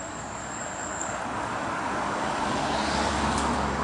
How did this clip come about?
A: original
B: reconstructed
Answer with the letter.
B